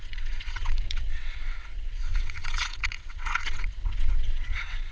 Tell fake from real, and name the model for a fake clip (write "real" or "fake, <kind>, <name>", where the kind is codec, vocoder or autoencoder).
fake, vocoder, WaveNeXt